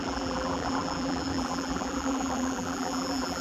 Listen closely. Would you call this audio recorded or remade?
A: remade